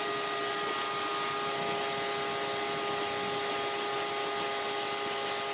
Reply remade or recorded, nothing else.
recorded